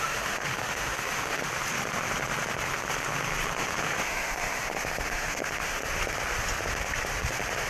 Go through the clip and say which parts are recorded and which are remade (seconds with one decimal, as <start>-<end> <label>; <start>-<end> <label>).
0.0-1.4 remade; 1.4-3.6 recorded; 3.6-5.8 remade; 5.8-7.7 recorded